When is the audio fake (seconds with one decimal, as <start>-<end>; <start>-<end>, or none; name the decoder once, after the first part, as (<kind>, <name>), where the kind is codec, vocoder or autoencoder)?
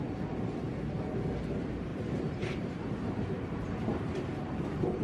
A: 1.9-5.0 (vocoder, BigVGAN v2)